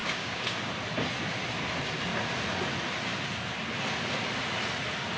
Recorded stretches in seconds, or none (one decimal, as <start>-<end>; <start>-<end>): 0.7-5.2